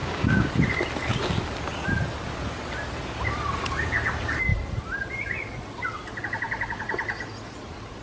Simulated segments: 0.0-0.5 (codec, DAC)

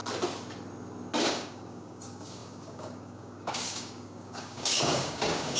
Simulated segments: 1.2-5.6 (codec, DAC)

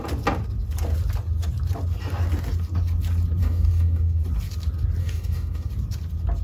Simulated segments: 3.4-4.2 (codec, DAC); 5.0-5.7

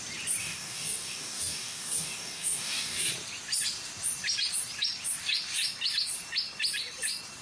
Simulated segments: 0.4-3.1 (codec, DAC)

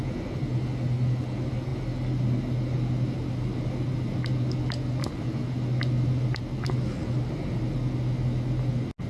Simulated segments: none

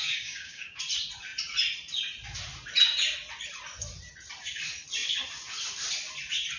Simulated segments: 0.0-0.8 (codec, DAC)